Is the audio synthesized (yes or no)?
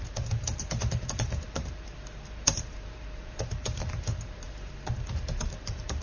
yes